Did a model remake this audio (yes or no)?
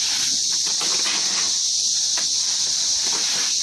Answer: no